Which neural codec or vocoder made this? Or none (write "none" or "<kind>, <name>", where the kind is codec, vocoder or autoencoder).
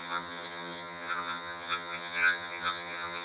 vocoder, HiFi-GAN